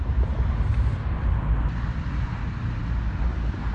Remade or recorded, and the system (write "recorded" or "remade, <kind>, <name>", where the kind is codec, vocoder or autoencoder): recorded